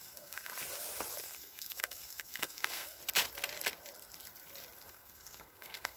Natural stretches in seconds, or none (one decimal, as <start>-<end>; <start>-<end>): 0.5-1.2; 3.0-4.9

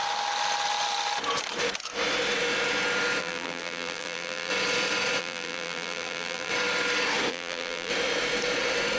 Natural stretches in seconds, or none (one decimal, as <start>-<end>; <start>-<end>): 0.0-3.2; 4.5-5.2; 6.5-7.3; 7.9-9.0

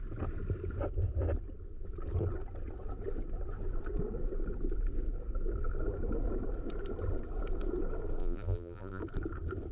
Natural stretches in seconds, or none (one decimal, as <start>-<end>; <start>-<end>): 0.0-8.2; 9.0-9.7

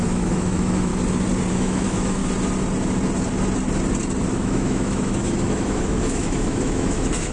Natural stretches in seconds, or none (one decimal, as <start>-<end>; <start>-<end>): 0.9-1.5; 2.2-4.3

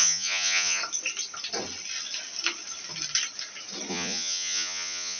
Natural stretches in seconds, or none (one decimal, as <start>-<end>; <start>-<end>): 0.8-3.9

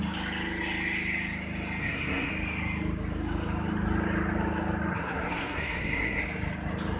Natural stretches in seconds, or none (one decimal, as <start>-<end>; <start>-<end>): 0.0-1.8; 2.3-4.9; 6.2-7.0